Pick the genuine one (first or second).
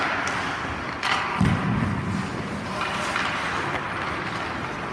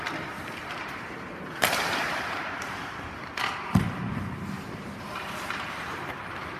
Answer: first